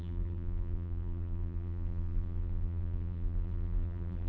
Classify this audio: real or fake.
fake